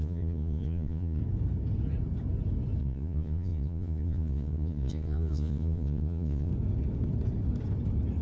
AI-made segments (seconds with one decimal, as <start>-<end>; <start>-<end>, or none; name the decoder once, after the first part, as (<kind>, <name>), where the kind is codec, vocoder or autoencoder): 0.0-1.2 (vocoder, Vocos); 2.8-6.5